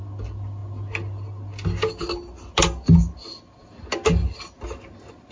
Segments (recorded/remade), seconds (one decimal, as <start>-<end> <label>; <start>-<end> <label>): 0.0-5.3 recorded